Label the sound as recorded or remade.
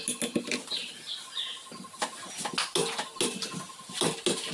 recorded